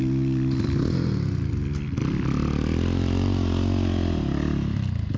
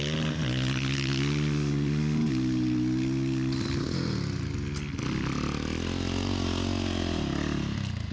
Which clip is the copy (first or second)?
first